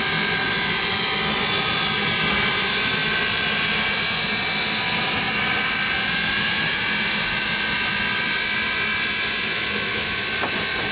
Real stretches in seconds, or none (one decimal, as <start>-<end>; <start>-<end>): 0.0-10.9